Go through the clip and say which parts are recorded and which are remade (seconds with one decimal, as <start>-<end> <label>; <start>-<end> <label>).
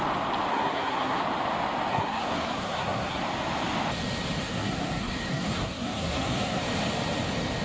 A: 0.0-0.5 recorded; 0.5-1.2 remade; 1.2-1.9 recorded; 1.9-3.2 remade; 3.2-4.4 recorded; 4.4-6.6 remade; 6.6-7.6 recorded